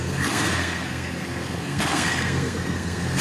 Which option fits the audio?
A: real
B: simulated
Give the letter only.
B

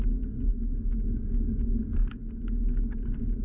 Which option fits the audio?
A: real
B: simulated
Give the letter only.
B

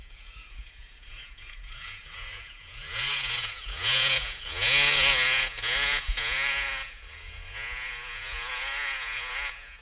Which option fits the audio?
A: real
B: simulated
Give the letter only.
B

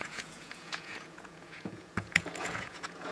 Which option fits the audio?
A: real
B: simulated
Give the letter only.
B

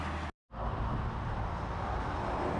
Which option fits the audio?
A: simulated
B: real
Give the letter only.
B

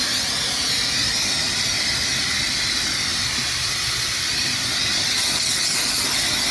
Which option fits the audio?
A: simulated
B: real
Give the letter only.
B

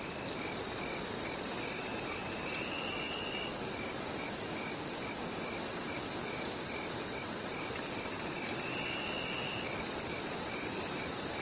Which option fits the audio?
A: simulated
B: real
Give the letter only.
B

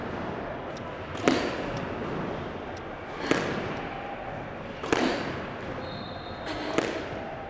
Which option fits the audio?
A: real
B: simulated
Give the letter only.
A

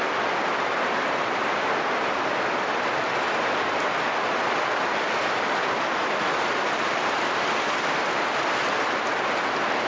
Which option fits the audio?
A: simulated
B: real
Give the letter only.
B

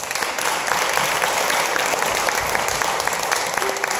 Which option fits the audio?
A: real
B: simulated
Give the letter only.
B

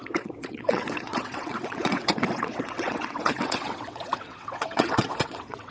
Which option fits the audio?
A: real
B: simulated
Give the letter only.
B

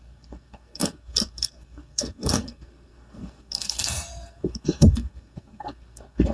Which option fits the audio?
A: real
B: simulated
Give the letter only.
B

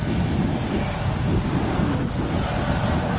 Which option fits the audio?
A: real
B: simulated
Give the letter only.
A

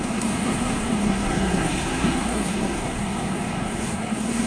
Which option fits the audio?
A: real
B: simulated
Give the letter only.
B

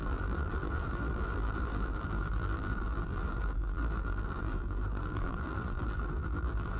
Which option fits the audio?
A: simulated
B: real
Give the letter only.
A